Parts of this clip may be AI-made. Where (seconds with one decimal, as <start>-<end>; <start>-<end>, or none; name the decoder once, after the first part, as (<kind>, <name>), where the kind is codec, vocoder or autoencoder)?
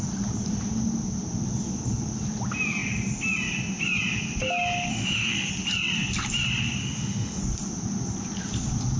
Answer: 4.9-5.5 (autoencoder, DAC-VAE); 6.8-7.4